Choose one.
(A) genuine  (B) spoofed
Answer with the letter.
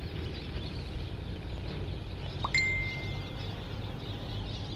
A